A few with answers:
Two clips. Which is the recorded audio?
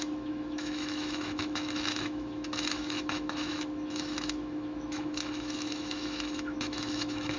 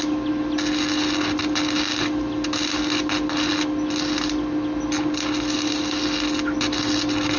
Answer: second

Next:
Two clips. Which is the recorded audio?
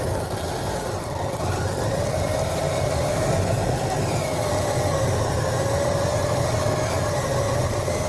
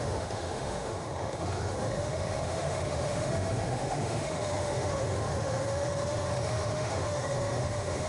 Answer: first